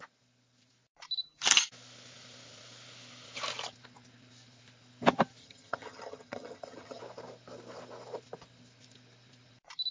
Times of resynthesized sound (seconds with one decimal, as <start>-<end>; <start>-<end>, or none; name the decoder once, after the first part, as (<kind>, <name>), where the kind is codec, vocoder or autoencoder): 5.4-7.0 (vocoder, HiFi-GAN)